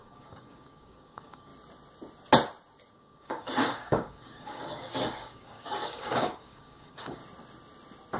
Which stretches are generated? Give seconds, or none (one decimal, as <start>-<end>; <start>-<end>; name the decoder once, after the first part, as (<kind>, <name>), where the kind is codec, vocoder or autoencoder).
0.0-1.5 (codec, DAC); 2.9-7.2